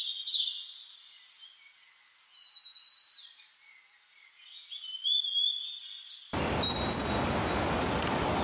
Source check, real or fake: real